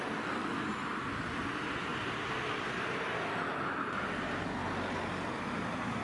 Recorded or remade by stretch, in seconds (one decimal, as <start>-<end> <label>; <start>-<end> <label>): 0.0-6.0 recorded